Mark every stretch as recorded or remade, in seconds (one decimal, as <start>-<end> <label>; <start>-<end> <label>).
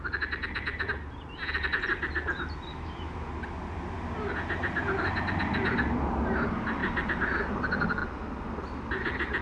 0.0-2.7 recorded; 2.7-3.3 remade; 3.3-9.4 recorded